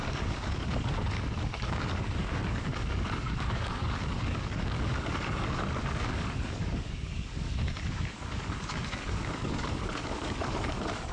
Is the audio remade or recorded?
remade